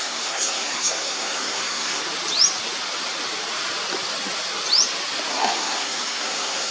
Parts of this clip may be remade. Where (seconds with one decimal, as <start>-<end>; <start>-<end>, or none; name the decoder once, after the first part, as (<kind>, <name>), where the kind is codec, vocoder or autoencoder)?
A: 0.0-2.0 (codec, SNAC); 5.3-6.7